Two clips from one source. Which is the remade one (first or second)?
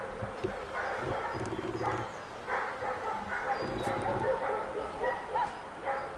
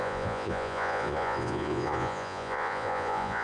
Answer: second